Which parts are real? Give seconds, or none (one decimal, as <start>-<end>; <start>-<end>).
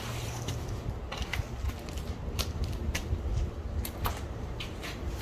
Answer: 1.3-1.9; 3.3-4.1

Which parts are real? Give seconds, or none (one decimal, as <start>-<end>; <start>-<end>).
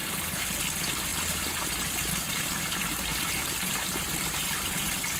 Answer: 0.6-3.1; 4.1-5.2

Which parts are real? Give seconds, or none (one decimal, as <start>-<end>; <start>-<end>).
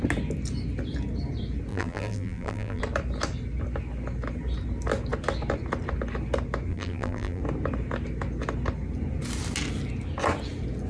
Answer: 0.0-1.7; 2.8-6.7; 7.4-10.9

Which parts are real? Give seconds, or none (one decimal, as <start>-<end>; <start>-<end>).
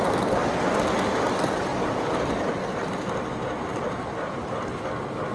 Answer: 0.0-1.7; 2.5-3.7; 4.3-5.3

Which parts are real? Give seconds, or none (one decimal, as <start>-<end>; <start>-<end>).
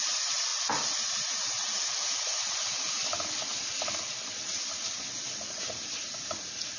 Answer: 3.0-5.6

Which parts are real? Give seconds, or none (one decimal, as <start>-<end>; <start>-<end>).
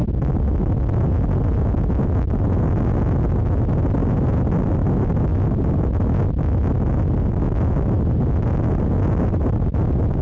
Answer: 0.0-10.2